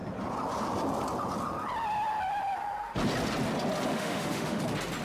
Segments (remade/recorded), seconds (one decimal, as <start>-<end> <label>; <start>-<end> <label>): 0.0-3.9 recorded; 3.9-4.6 remade; 4.6-5.0 recorded